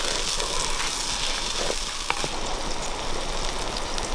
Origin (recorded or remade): recorded